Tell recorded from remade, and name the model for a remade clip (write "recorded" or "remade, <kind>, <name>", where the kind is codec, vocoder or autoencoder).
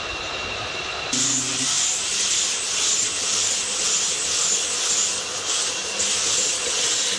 recorded